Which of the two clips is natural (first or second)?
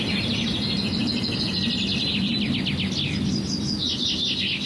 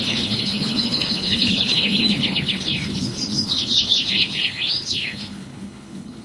first